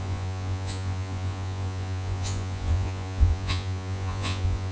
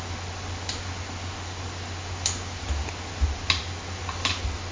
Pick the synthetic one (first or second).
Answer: first